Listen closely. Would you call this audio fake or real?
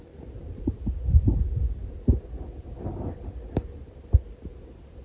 real